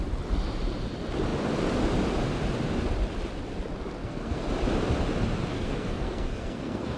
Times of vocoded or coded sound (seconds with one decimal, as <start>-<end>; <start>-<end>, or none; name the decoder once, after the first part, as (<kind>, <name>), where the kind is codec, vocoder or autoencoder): 4.0-4.5 (codec, SNAC); 5.5-7.0